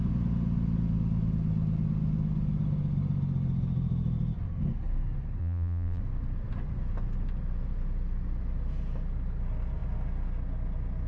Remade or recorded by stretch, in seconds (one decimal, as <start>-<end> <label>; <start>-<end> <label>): 0.0-5.4 recorded; 5.4-6.0 remade; 6.0-11.1 recorded